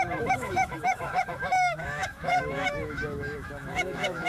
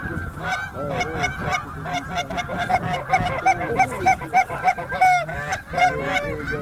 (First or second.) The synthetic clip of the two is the first